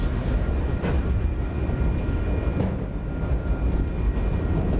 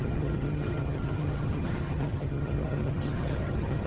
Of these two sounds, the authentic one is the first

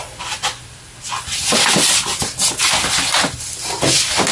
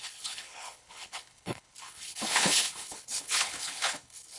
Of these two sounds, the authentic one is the first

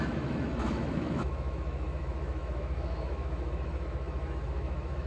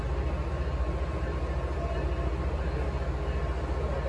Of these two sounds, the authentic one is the second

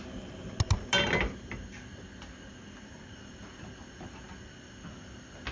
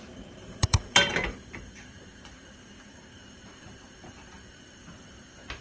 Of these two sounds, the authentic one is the first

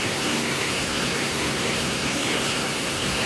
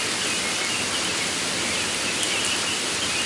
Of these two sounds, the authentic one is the second